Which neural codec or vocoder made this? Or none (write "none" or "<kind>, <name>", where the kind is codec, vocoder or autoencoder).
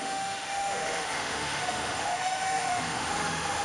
autoencoder, DAC-VAE